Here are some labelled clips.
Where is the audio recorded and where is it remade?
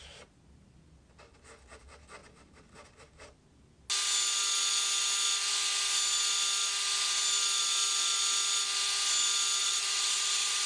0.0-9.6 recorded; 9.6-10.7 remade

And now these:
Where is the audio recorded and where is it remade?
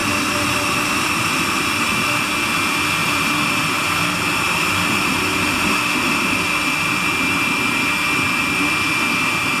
0.0-9.6 recorded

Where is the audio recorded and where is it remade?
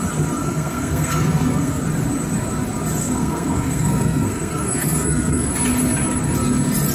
0.0-0.4 recorded; 0.4-1.8 remade; 1.8-3.0 recorded; 3.0-5.5 remade; 5.5-6.9 recorded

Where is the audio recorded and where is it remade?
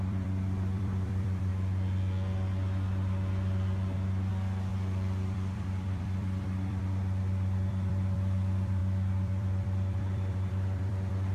0.0-1.5 remade; 1.5-4.3 recorded; 4.3-11.3 remade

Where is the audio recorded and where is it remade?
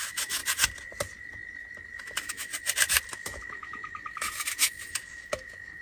0.0-0.4 remade; 0.4-2.0 recorded; 2.0-2.5 remade; 2.5-3.1 recorded; 3.1-5.8 remade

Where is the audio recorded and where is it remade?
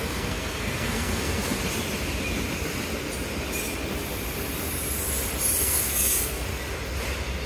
0.0-1.6 remade; 1.6-5.6 recorded; 5.6-6.5 remade; 6.5-7.5 recorded